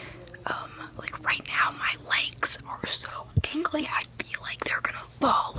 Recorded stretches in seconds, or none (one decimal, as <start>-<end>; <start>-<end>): 0.0-3.1; 4.0-5.6